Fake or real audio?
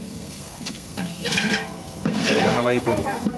fake